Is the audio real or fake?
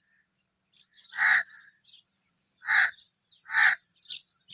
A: real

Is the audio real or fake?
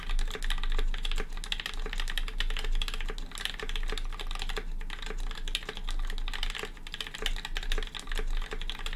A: real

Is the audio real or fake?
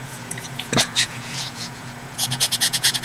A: fake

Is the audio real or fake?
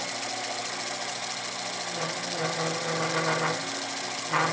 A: real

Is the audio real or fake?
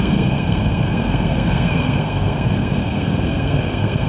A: fake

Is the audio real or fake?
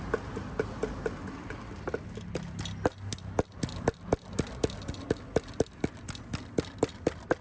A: real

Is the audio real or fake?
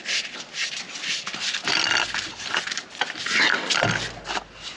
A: real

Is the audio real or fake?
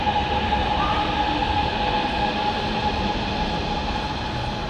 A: real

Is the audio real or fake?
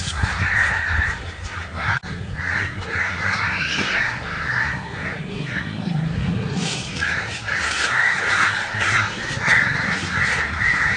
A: fake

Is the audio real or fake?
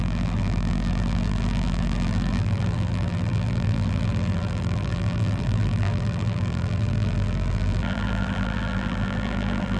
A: fake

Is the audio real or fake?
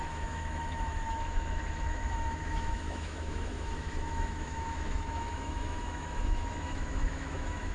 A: fake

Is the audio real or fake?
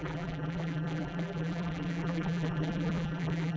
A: fake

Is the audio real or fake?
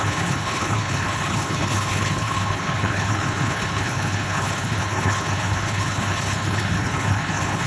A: fake